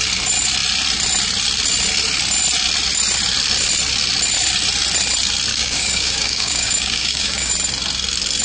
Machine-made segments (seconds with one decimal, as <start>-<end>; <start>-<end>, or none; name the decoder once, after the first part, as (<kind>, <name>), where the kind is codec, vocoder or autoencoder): 5.5-7.5 (codec, DAC)